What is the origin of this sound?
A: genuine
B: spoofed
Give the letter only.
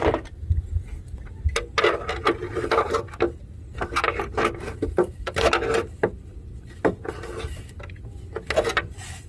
A